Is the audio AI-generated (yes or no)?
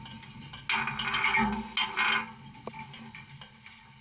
no